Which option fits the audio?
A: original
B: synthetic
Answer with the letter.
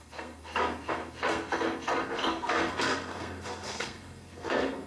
B